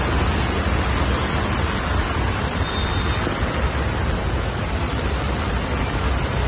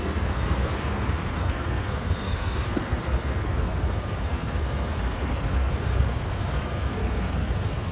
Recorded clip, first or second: first